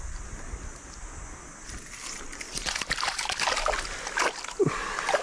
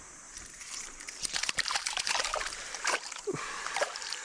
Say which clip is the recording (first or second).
first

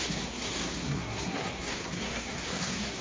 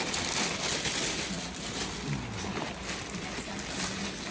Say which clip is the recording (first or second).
second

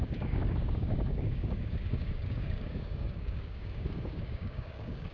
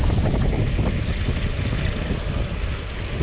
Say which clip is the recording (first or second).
second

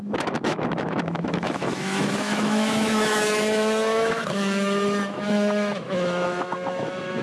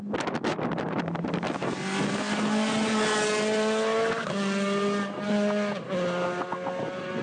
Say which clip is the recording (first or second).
second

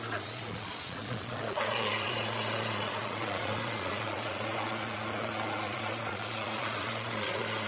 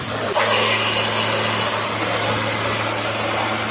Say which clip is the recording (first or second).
second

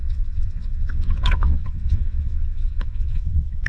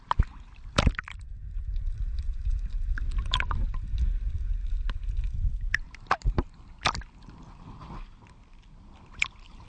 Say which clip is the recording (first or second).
second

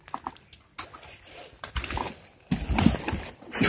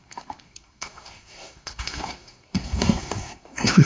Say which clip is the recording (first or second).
first